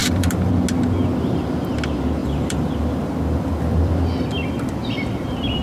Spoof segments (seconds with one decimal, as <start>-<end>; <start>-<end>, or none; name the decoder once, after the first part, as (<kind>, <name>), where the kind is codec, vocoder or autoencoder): 0.0-0.5 (vocoder, BigVGAN v2); 2.2-5.6